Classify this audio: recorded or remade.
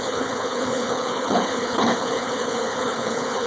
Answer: remade